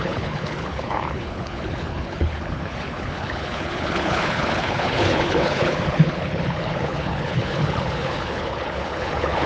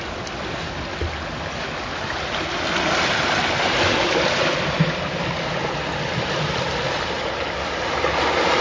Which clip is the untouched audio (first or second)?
second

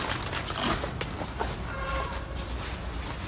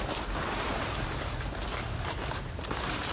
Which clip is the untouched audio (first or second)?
first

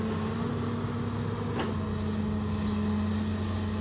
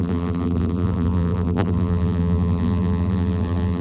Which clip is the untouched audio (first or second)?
first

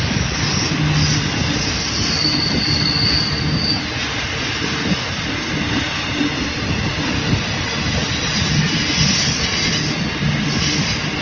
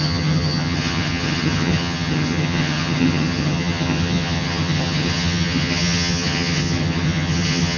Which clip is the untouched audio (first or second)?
first